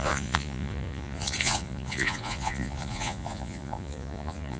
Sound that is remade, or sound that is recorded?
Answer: remade